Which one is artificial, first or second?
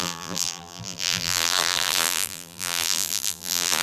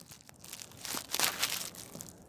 first